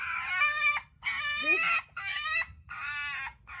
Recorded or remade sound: recorded